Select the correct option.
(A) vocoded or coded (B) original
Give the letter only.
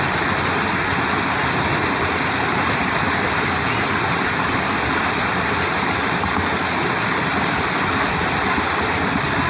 B